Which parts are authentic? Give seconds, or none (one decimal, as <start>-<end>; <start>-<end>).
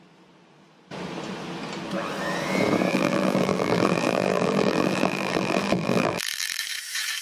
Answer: 0.0-2.9; 6.6-7.2